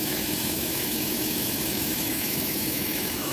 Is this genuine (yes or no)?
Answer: no